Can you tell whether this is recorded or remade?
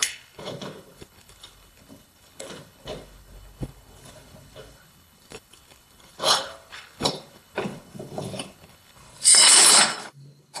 remade